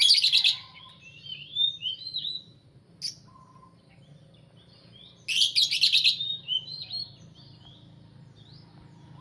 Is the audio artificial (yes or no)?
no